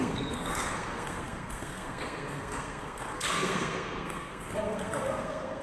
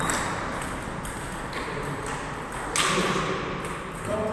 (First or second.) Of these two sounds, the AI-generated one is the first